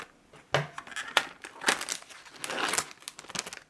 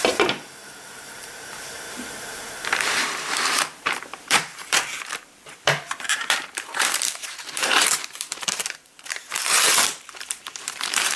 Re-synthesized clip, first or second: second